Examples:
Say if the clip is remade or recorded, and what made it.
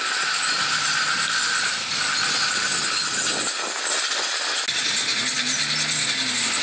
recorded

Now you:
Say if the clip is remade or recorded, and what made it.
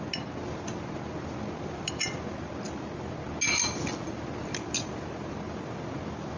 recorded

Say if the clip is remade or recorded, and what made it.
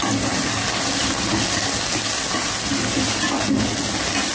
recorded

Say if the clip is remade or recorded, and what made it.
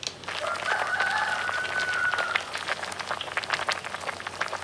recorded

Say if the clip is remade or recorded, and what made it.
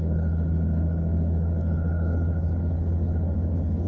remade, codec, HILCodec